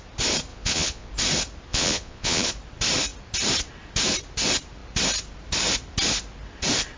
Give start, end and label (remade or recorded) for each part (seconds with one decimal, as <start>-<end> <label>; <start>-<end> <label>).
0.0-0.5 recorded; 0.5-1.1 remade; 1.1-1.7 recorded; 1.7-2.5 remade; 2.5-7.0 recorded